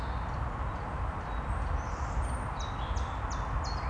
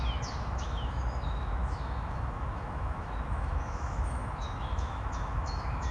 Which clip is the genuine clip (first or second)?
first